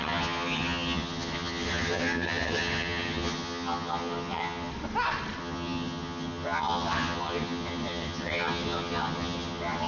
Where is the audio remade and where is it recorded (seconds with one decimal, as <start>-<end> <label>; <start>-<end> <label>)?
0.0-4.7 remade; 4.7-5.4 recorded; 5.4-9.9 remade